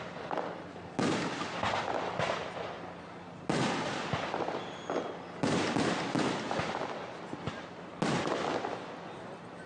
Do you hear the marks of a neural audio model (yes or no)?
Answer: no